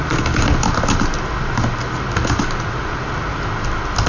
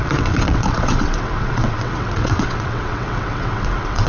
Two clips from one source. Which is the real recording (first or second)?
first